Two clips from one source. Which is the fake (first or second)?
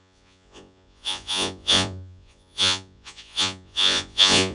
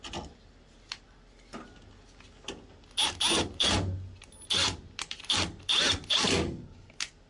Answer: first